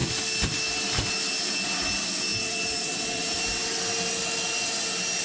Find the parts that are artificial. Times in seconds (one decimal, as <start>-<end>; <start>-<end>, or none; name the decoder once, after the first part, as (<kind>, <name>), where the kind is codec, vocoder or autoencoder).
none